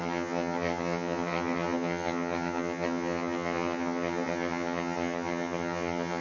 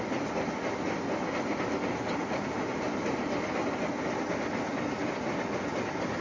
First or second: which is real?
second